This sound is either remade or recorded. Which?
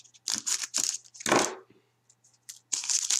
recorded